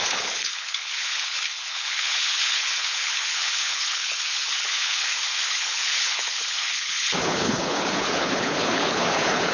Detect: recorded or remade remade